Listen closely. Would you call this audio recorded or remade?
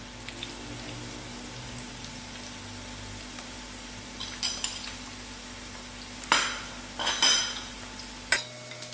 recorded